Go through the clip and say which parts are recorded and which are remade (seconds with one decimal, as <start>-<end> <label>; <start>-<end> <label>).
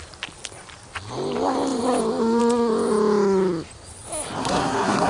0.0-4.4 recorded; 4.4-5.1 remade